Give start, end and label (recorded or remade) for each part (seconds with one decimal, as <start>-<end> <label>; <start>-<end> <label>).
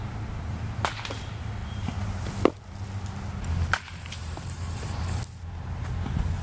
0.0-1.6 recorded; 1.6-2.2 remade; 2.2-4.2 recorded; 4.2-5.0 remade; 5.0-6.4 recorded